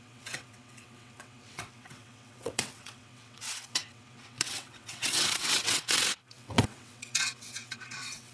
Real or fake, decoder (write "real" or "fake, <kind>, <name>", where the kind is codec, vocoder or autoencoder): fake, vocoder, WaveNeXt